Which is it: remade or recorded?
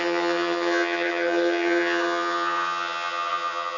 remade